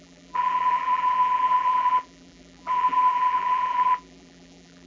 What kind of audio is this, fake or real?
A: fake